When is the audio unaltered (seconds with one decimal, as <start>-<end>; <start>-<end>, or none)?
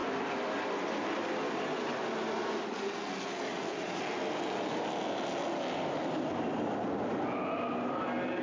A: 0.0-3.5; 4.0-8.4